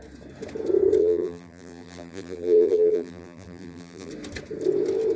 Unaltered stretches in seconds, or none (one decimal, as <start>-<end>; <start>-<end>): 0.0-1.0; 4.1-5.2